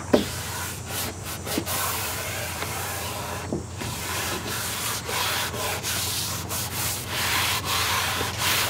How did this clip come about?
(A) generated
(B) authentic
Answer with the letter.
A